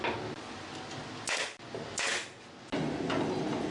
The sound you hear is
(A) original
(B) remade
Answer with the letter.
A